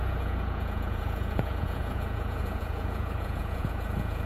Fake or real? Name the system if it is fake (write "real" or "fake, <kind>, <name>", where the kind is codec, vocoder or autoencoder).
fake, vocoder, Vocos